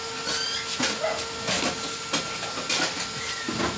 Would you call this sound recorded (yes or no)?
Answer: yes